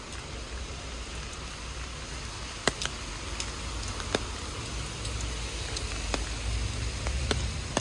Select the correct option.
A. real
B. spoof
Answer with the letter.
A